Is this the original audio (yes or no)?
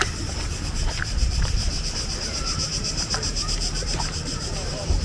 no